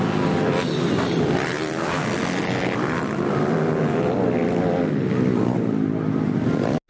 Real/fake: real